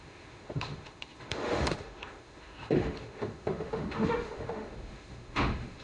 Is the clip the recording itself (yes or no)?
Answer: no